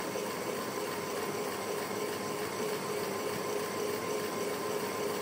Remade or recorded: remade